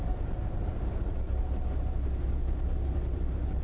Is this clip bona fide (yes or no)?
yes